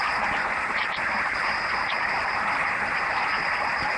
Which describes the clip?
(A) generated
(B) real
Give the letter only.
B